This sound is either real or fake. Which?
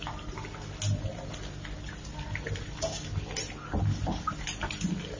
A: real